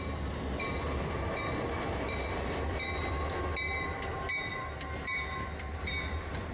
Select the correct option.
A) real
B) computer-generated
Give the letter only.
B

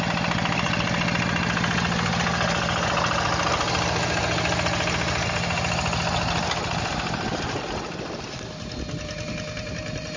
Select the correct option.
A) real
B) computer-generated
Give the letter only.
A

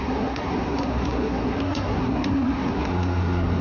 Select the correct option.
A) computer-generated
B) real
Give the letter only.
A